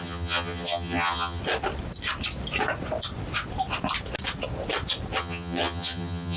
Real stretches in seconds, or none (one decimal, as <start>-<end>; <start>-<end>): 1.4-5.2